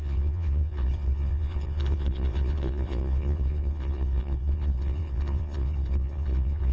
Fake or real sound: fake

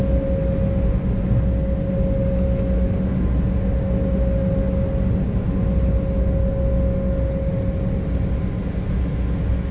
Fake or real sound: real